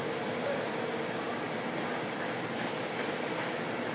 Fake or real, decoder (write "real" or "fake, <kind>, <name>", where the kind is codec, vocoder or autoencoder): real